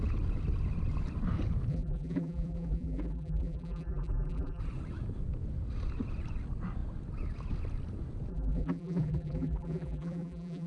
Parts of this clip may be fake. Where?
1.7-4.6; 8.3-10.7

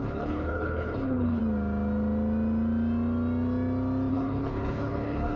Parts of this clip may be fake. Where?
0.0-1.4; 4.1-5.4